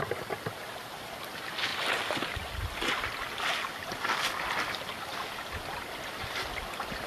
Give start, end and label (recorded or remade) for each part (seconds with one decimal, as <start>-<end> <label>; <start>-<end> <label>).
0.0-7.1 recorded